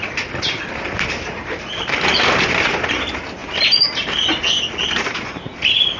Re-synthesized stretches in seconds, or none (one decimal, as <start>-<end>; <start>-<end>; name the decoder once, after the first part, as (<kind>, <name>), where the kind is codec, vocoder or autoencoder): none